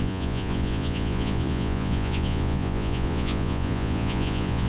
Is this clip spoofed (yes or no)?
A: yes